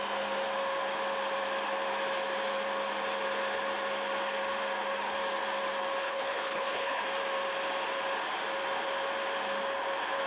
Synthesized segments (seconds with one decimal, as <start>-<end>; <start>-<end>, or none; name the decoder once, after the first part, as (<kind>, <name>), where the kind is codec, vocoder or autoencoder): 6.0-7.0 (codec, HILCodec)